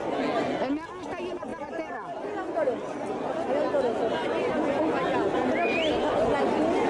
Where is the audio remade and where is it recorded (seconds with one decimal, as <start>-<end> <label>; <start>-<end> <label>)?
0.0-6.9 recorded

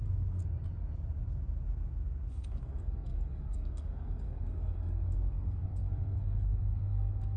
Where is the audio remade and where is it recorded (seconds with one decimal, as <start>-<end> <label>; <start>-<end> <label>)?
0.0-0.4 remade; 0.4-2.3 recorded; 2.3-7.4 remade

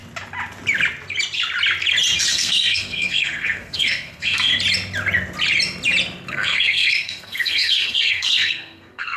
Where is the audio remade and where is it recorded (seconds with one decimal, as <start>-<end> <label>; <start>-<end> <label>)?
0.0-2.3 recorded; 2.3-4.5 remade; 4.5-6.3 recorded; 6.3-9.2 remade

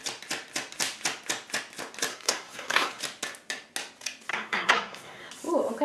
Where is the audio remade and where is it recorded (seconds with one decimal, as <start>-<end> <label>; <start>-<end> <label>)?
0.0-2.1 recorded; 2.1-3.0 remade; 3.0-4.3 recorded; 4.3-5.3 remade; 5.3-5.8 recorded

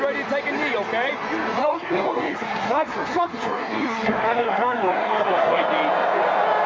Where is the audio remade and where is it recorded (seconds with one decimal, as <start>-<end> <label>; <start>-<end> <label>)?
0.0-1.6 recorded; 1.6-5.6 remade; 5.6-6.7 recorded